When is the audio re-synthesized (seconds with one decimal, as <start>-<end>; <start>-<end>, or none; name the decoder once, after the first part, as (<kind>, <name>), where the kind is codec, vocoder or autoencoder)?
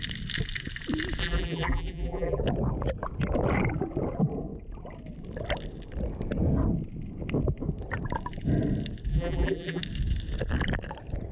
1.2-2.4 (vocoder, BigVGAN v2); 9.1-9.8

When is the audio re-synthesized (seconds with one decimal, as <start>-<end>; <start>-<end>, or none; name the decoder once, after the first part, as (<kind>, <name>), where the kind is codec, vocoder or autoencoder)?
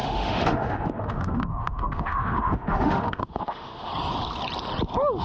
0.0-3.9 (autoencoder, DAC-VAE)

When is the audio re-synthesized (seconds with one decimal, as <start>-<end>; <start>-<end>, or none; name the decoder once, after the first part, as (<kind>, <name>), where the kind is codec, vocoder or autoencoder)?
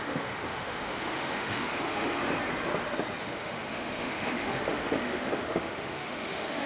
0.0-2.2 (autoencoder, DAC-VAE); 3.2-6.7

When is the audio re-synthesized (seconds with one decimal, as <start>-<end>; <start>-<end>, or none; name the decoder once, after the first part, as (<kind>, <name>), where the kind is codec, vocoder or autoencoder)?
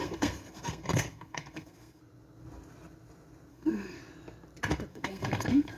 0.0-2.0 (codec, SNAC); 3.5-4.0; 4.9-5.8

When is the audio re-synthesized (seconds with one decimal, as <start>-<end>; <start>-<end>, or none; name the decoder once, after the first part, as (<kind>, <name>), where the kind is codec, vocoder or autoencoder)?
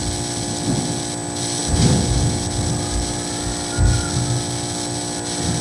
none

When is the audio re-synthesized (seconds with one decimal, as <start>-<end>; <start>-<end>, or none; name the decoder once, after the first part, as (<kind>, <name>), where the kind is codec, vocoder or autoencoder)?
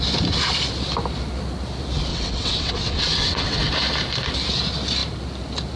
2.1-3.7 (vocoder, WaveNeXt)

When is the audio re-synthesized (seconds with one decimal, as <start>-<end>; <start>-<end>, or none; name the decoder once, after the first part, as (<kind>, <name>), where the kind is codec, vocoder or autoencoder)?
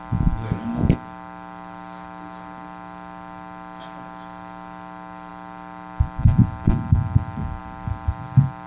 none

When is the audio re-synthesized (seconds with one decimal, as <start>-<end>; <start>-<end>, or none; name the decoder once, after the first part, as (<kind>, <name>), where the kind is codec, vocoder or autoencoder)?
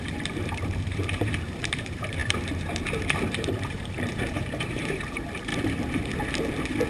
0.0-5.5 (vocoder, BigVGAN v2)